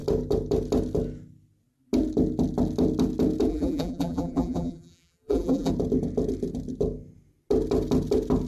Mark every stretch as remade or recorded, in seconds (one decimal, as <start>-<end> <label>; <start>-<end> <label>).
0.0-3.5 recorded; 3.5-5.7 remade; 5.7-8.5 recorded